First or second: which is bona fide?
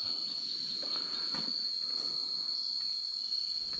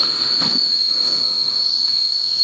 first